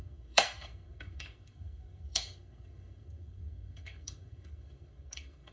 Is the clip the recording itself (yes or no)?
no